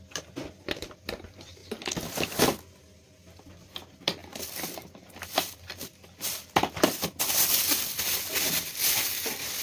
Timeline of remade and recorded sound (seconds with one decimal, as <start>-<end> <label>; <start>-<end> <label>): 0.0-9.6 recorded